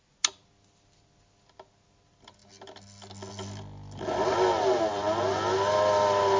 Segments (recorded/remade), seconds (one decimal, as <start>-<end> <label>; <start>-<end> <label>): 0.0-6.4 recorded